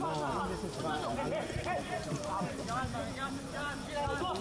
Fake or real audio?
real